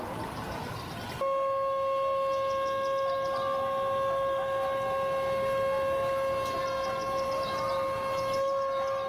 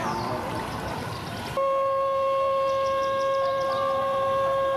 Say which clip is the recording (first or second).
first